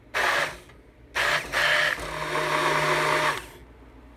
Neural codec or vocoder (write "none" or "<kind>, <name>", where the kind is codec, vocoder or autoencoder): none